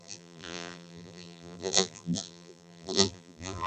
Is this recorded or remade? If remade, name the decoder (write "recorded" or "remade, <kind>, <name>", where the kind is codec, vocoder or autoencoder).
remade, vocoder, BigVGAN v2